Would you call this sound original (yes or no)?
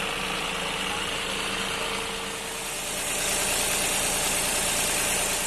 yes